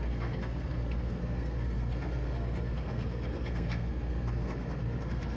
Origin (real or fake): fake